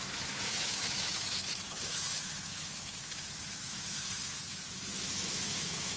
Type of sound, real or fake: fake